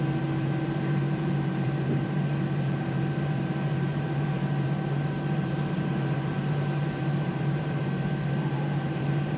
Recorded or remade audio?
remade